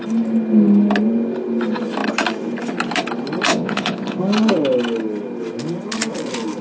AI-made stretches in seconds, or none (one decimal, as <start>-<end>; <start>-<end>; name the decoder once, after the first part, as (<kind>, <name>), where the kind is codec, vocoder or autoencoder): 3.5-4.2 (vocoder, Vocos)